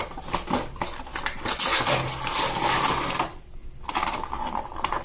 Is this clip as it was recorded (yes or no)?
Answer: yes